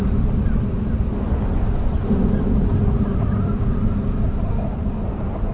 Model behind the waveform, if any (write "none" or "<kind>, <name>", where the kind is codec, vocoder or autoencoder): none